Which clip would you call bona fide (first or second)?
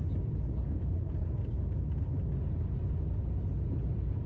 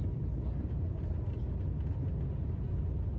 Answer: first